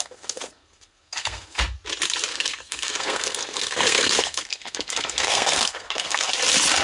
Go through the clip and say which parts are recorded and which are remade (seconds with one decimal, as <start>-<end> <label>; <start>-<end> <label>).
0.0-1.6 remade; 1.6-2.3 recorded; 2.3-6.3 remade; 6.3-6.8 recorded